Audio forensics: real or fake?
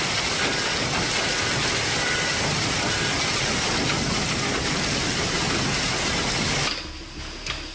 real